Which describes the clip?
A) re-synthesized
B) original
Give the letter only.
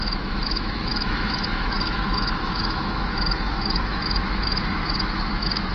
A